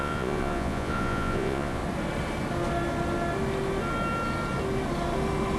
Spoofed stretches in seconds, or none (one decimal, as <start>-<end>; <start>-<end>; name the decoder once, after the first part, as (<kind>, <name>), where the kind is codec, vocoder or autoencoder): 0.0-1.8 (vocoder, Vocos)